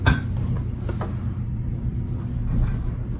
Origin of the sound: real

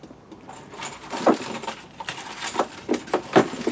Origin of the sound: real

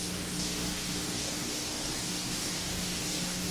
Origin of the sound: fake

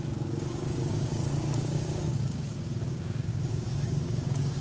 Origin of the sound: fake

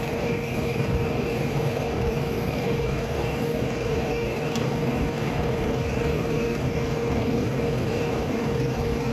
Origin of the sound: fake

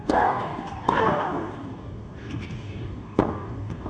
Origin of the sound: fake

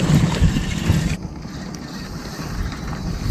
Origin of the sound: real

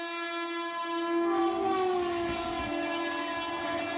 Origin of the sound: real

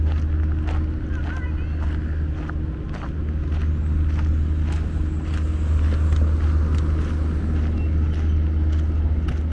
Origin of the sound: real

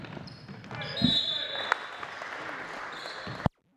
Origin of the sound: real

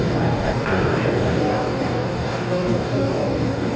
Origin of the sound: fake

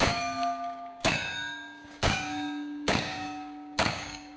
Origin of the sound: fake